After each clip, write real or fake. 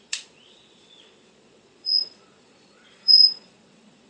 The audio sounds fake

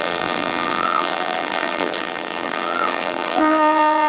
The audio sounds fake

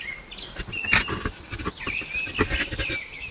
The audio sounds real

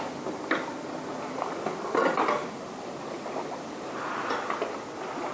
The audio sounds real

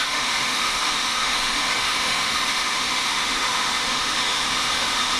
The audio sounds fake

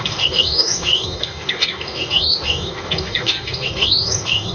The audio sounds fake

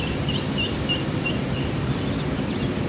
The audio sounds real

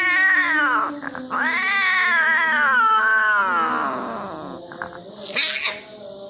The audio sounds real